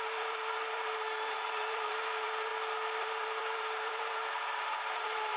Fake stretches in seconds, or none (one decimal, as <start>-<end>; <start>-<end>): 0.0-2.5; 3.0-5.4